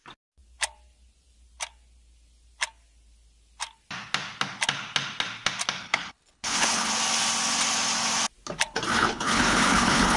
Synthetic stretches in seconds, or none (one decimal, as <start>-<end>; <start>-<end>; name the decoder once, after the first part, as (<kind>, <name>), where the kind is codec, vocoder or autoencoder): 5.8-6.9 (codec, HILCodec); 8.9-10.2